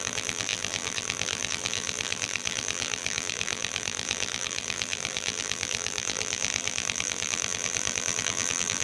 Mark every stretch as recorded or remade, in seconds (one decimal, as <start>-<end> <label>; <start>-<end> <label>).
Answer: 0.0-8.8 remade